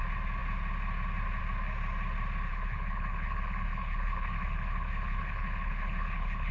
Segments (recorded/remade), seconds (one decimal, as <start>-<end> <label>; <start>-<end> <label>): 0.0-2.5 recorded; 2.5-6.5 remade